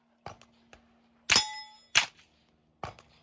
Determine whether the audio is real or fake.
real